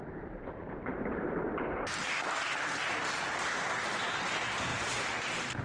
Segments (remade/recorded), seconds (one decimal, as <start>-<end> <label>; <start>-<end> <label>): 0.0-2.4 remade; 2.4-4.7 recorded; 4.7-5.6 remade